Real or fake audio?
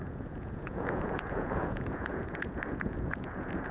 fake